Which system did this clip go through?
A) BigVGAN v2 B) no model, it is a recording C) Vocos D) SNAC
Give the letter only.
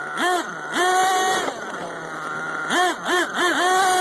B